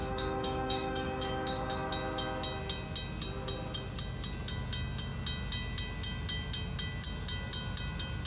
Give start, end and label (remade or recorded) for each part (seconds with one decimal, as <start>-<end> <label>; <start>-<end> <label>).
0.0-1.9 remade; 1.9-8.3 recorded